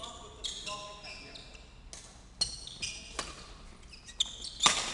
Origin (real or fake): real